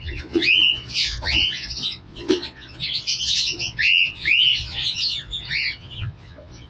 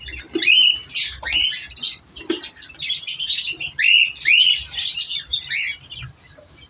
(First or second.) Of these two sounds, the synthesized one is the first